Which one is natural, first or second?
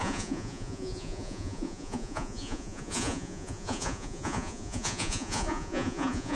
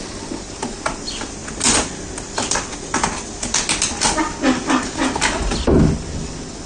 second